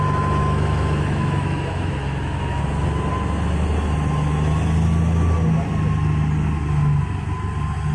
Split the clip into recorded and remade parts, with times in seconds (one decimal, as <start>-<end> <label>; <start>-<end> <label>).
0.0-0.4 recorded; 0.4-2.6 remade; 2.6-7.9 recorded